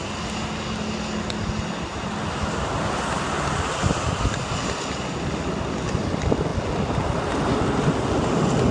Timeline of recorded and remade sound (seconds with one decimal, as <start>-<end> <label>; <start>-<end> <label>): 0.0-8.7 recorded